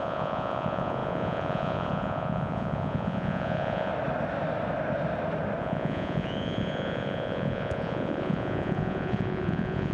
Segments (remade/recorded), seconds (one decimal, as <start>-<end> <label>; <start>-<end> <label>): 0.0-3.9 remade; 3.9-5.6 recorded; 5.6-9.9 remade